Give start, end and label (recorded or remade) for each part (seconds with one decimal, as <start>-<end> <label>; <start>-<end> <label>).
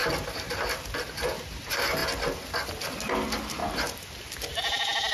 0.0-5.1 recorded